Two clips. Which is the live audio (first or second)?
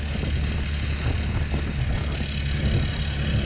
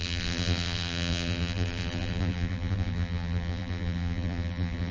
first